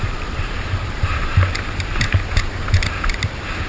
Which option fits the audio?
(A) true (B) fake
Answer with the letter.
B